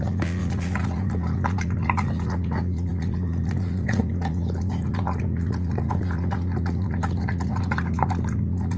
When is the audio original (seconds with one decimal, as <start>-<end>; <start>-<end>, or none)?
none